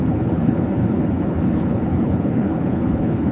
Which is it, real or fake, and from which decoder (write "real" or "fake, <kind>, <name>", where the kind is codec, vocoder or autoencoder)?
fake, codec, HILCodec